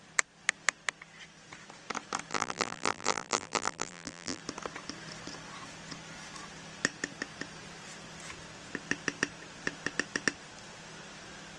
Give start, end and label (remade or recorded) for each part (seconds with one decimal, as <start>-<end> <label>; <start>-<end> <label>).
0.0-2.3 recorded; 2.3-4.4 remade; 4.4-11.6 recorded